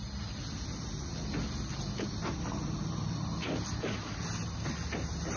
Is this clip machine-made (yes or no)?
no